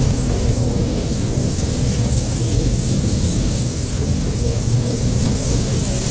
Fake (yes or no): yes